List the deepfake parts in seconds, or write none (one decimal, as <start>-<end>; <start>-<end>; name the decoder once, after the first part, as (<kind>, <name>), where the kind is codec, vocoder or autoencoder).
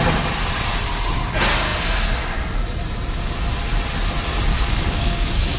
4.5-5.6 (codec, DAC)